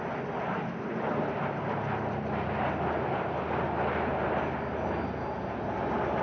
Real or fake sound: real